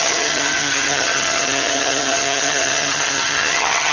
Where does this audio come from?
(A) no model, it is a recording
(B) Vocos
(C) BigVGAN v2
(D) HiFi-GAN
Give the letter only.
D